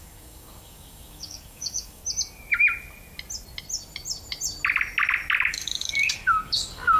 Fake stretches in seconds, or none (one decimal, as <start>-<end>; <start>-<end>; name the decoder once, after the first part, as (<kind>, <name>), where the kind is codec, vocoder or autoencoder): 0.0-2.0 (codec, DAC); 5.5-7.0